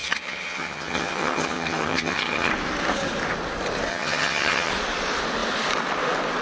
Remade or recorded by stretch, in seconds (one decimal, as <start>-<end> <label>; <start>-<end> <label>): 0.0-2.5 remade; 2.5-3.9 recorded; 3.9-4.7 remade; 4.7-6.4 recorded